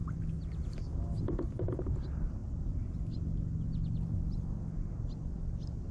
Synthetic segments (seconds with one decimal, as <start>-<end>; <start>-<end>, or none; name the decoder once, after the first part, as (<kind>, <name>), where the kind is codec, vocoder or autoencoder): none